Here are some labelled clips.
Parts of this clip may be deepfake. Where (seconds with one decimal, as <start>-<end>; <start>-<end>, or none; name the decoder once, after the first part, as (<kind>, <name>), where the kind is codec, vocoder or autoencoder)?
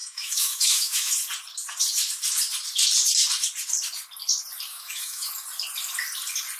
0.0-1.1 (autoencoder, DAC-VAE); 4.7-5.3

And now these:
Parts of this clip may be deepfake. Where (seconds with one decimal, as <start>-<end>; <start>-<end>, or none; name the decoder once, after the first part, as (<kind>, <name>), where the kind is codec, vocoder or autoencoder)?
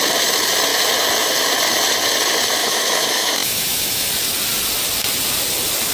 2.6-4.1 (autoencoder, DAC-VAE)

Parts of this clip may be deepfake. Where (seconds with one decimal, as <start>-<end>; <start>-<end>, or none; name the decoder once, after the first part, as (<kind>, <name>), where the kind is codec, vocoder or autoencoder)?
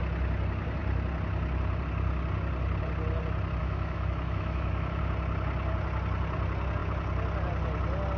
3.6-5.0 (autoencoder, DAC-VAE)